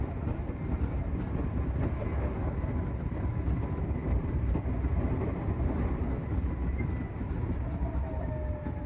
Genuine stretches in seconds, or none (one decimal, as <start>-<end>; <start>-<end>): 0.0-4.0; 4.6-8.9